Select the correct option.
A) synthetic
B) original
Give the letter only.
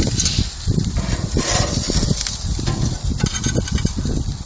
B